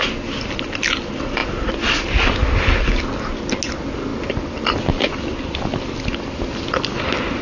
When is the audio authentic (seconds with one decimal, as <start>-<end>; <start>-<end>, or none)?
0.0-7.4